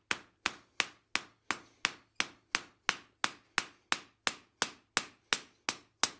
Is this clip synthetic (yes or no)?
no